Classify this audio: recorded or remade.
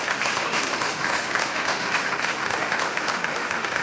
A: remade